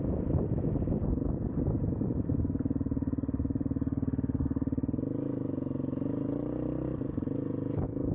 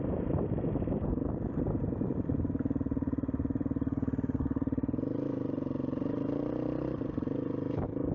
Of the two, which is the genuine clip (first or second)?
first